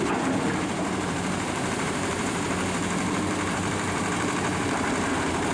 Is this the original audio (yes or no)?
no